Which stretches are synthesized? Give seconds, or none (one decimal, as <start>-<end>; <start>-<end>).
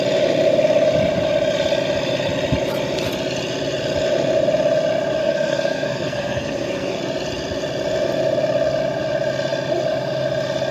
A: 5.2-7.0